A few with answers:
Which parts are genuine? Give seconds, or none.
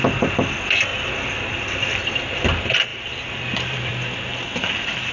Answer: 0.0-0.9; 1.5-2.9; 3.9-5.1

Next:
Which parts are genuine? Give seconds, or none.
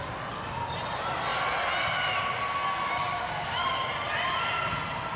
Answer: 0.0-5.2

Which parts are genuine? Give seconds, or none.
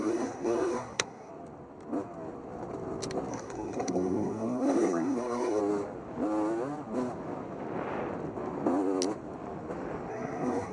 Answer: 1.3-3.3; 5.6-10.1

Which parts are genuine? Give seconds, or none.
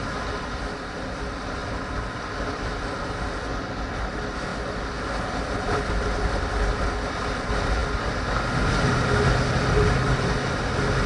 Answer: 0.0-11.1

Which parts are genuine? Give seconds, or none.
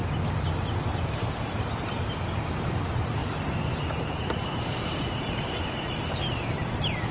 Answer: 0.0-2.6